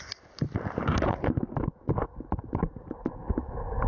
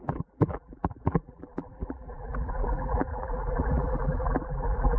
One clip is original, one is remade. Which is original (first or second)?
first